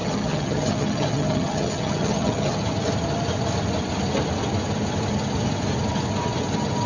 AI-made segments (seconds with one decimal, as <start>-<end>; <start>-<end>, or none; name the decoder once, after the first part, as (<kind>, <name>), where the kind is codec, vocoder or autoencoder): 0.0-2.6 (vocoder, HiFi-GAN)